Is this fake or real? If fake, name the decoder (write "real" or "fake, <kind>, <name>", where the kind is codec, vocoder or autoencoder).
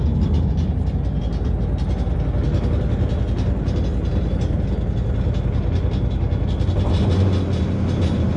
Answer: real